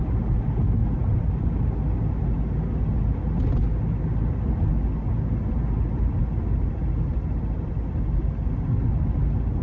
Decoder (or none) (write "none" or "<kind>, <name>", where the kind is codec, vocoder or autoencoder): none